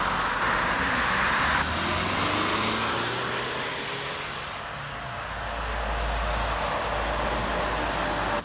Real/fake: real